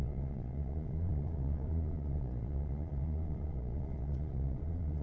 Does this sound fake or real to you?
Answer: fake